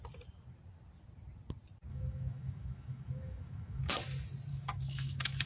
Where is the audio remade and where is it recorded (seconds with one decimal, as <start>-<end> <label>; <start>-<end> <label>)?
0.0-1.9 recorded; 1.9-3.9 remade; 3.9-4.5 recorded; 4.5-5.5 remade